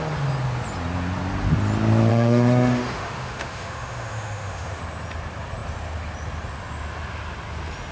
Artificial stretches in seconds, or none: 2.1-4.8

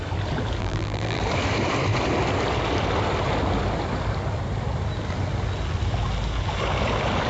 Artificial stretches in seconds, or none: 0.6-1.2

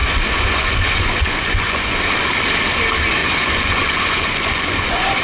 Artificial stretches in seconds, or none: 0.0-1.9; 3.2-5.2